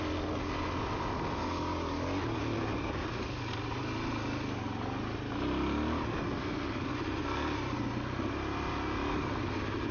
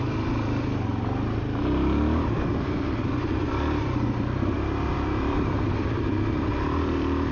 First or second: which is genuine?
first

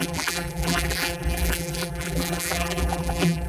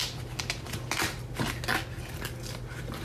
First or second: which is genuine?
second